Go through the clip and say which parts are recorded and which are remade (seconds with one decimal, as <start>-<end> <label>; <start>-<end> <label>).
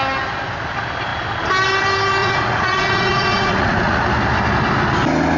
0.0-2.2 recorded; 2.2-4.1 remade; 4.1-5.4 recorded